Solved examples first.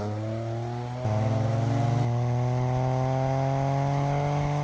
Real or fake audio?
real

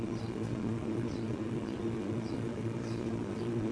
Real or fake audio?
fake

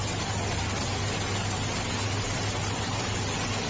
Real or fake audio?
real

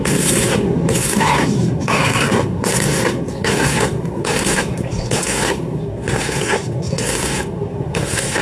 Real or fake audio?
fake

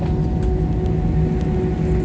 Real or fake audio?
real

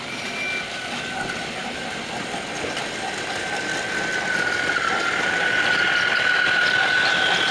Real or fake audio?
real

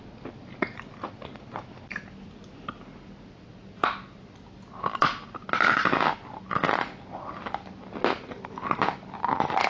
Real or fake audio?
real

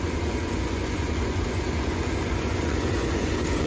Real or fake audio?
fake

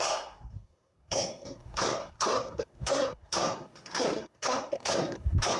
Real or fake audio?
fake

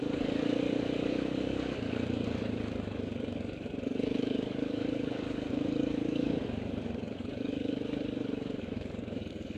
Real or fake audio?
fake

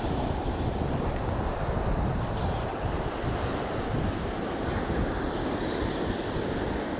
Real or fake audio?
real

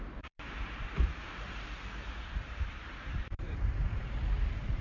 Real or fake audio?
fake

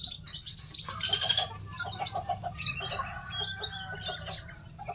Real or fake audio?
fake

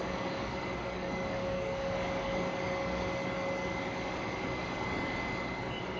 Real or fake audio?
fake